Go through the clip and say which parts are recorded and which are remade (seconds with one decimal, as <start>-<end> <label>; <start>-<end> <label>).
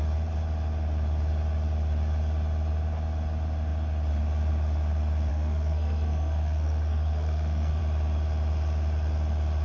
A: 0.0-5.3 recorded; 5.3-7.8 remade; 7.8-9.6 recorded